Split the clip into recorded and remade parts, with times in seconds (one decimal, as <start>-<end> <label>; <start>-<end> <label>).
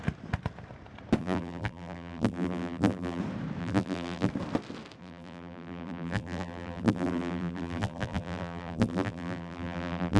0.0-1.2 recorded; 1.2-3.2 remade; 3.2-3.6 recorded; 3.6-4.3 remade; 4.3-5.0 recorded; 5.0-10.2 remade